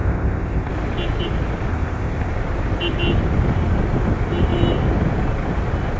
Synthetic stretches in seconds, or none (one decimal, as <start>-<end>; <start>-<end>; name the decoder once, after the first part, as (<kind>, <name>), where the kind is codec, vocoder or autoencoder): 0.0-0.7 (codec, ZipCodec); 1.7-2.3

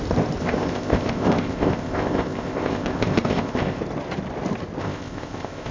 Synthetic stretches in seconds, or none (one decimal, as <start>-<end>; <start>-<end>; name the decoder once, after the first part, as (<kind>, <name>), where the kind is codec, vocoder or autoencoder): 0.4-3.8 (codec, ZipCodec); 4.8-5.7

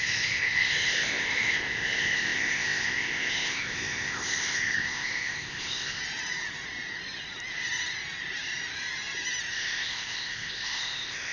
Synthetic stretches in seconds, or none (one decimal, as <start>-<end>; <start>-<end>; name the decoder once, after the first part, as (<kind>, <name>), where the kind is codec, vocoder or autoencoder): 0.0-6.0 (codec, ZipCodec); 9.5-11.3

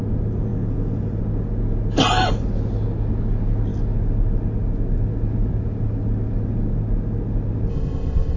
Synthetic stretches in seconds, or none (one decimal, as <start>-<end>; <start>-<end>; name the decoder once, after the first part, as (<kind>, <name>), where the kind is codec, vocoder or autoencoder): 7.7-8.4 (codec, ZipCodec)